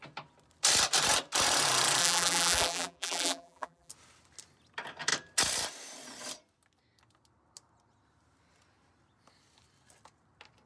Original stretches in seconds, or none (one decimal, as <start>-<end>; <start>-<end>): 0.0-2.0; 3.9-10.7